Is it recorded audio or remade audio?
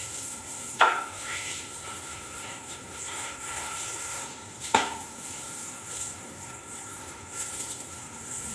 remade